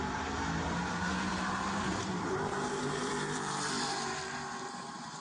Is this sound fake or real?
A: fake